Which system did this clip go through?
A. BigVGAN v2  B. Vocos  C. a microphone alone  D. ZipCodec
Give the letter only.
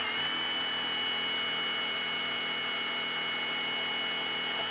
C